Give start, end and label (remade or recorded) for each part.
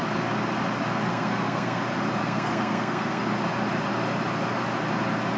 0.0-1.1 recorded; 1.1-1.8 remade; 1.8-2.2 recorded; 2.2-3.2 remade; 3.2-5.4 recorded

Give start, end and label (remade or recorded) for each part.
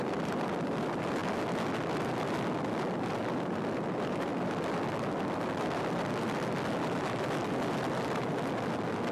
0.0-9.1 recorded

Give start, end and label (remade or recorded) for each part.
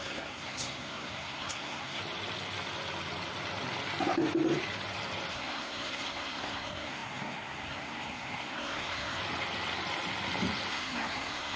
0.0-2.0 remade; 2.0-5.3 recorded; 5.3-9.2 remade; 9.2-10.7 recorded; 10.7-11.6 remade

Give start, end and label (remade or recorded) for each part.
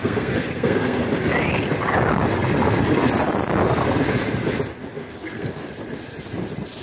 0.0-1.0 remade; 1.0-4.9 recorded; 4.9-5.7 remade; 5.7-6.8 recorded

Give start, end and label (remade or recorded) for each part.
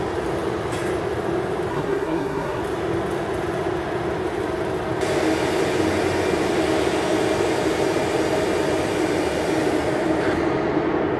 0.0-1.7 recorded; 1.7-2.6 remade; 2.6-11.2 recorded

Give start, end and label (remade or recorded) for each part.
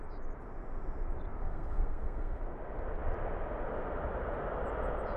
0.0-1.4 recorded; 1.4-2.4 remade; 2.4-5.2 recorded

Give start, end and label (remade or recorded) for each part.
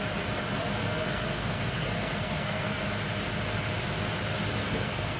0.0-0.8 recorded; 0.8-2.8 remade; 2.8-4.6 recorded; 4.6-5.2 remade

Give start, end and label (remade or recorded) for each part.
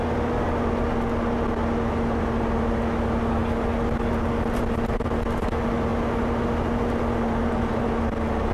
0.0-8.5 recorded